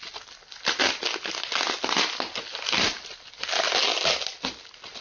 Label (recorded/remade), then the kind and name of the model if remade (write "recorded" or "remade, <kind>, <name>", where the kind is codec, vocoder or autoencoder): recorded